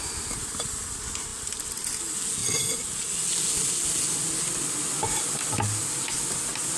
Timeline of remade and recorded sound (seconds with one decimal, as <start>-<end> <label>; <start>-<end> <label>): 0.0-6.8 recorded